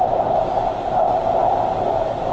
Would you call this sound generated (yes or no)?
yes